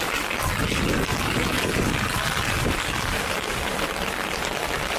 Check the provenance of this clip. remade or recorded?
recorded